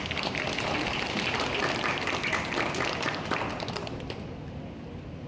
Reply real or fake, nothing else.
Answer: real